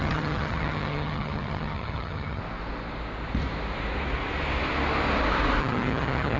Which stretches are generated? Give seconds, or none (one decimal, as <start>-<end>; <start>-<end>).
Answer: 0.0-2.4; 5.6-6.4

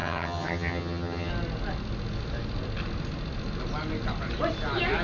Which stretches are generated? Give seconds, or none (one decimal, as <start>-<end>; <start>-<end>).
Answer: 0.0-1.3

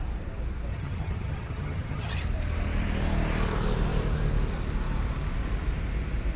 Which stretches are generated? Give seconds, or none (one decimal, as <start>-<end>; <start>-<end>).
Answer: 0.7-2.2